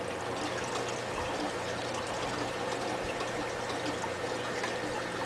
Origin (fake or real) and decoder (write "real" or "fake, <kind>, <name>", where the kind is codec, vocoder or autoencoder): real